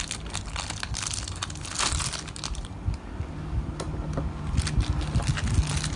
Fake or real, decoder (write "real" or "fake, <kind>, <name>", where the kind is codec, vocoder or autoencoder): real